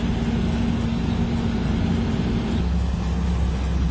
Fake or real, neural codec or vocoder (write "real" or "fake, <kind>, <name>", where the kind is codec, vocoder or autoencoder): real